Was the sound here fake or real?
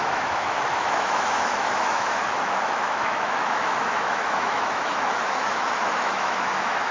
fake